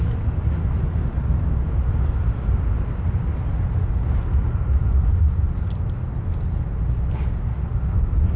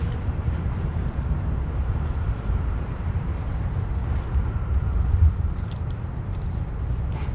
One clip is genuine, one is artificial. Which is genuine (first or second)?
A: first